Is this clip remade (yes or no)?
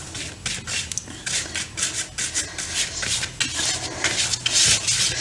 no